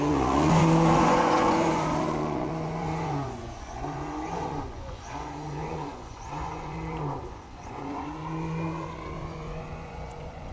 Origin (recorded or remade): remade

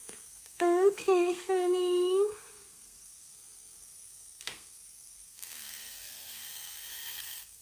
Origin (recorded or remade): remade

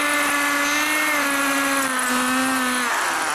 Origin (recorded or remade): recorded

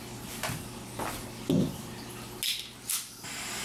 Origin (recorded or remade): recorded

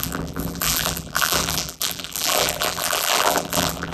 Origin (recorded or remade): remade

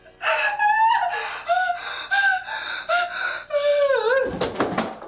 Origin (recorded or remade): recorded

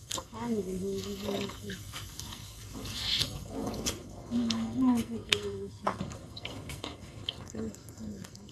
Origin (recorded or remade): remade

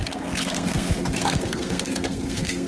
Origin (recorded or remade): remade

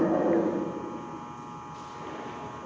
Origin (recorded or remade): recorded